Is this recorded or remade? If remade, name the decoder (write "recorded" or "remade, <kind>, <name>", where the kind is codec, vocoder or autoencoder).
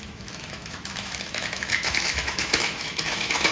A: remade, autoencoder, DAC-VAE